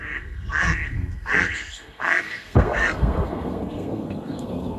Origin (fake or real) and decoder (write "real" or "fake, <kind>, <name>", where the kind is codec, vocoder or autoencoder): fake, codec, SNAC